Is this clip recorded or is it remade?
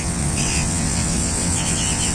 remade